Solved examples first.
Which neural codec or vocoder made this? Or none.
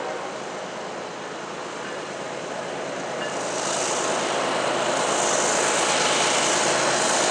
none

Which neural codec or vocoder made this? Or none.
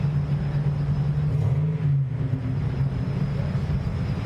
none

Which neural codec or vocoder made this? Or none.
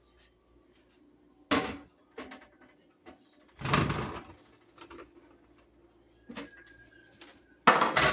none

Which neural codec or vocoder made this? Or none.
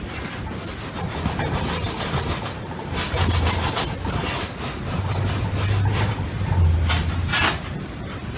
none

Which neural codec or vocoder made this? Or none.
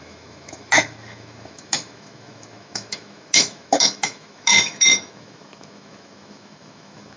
autoencoder, DAC-VAE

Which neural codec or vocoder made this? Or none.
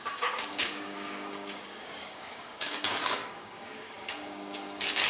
codec, DAC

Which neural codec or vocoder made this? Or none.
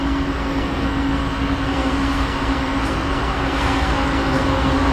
codec, SNAC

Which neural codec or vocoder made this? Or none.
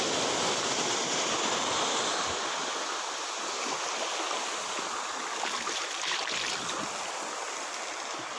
none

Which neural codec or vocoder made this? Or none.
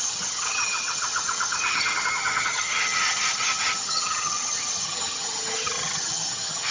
vocoder, HiFi-GAN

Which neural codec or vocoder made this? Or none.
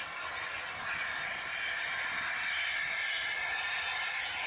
none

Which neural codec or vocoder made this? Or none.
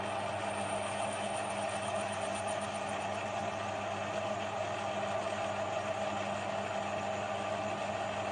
none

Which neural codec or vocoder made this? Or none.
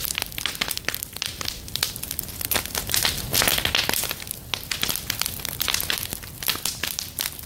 none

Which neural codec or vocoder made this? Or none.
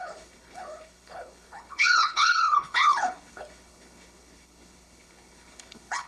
codec, HILCodec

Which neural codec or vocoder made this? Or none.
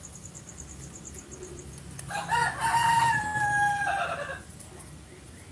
none